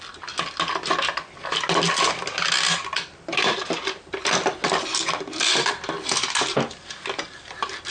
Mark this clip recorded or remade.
recorded